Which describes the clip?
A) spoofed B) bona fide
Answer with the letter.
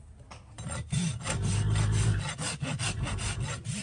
B